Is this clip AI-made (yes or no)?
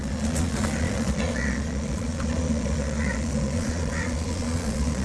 yes